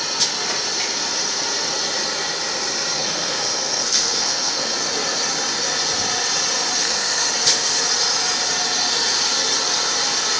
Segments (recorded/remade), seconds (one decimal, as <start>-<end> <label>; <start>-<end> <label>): 0.0-3.0 recorded; 3.0-4.7 remade; 4.7-6.8 recorded; 6.8-7.3 remade; 7.3-10.4 recorded